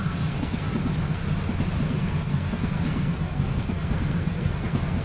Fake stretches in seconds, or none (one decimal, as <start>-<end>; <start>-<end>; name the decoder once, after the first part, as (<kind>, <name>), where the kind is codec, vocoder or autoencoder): 0.0-1.2 (codec, SNAC); 1.8-5.0